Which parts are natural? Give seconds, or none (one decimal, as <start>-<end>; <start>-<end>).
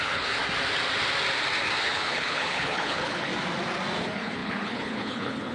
0.4-1.8; 3.3-4.0